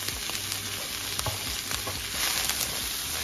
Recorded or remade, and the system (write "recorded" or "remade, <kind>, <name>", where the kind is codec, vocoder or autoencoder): recorded